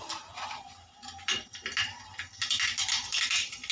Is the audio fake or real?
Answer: real